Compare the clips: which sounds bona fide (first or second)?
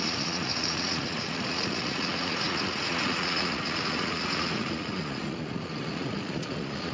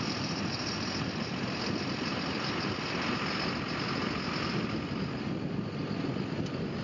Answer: second